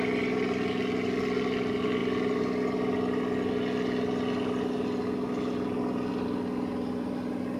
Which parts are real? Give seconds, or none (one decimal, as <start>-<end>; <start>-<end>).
0.0-7.6